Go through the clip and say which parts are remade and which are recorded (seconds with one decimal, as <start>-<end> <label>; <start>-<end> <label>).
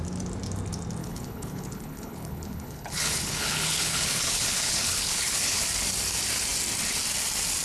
0.0-1.0 recorded; 1.0-5.6 remade; 5.6-7.6 recorded